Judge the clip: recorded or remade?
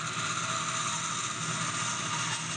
recorded